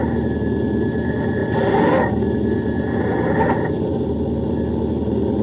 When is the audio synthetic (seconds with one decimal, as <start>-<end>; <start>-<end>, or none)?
none